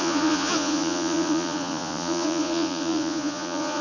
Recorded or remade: remade